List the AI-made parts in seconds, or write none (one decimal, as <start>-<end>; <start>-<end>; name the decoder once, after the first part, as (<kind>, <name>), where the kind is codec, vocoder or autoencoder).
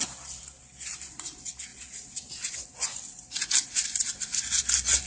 none